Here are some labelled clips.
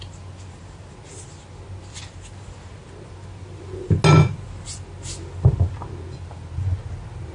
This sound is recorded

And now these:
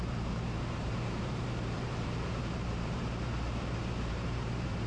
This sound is remade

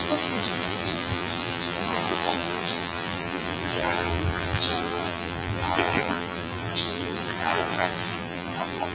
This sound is remade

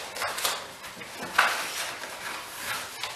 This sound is recorded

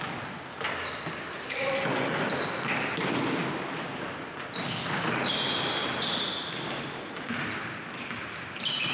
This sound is recorded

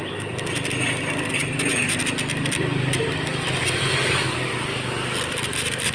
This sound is remade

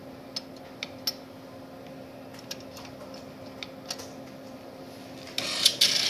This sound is recorded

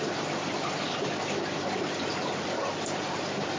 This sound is remade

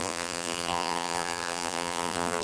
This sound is remade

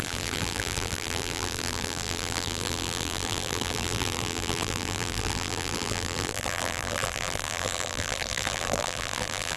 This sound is remade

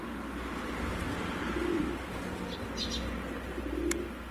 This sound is recorded